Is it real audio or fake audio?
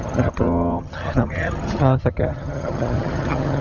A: fake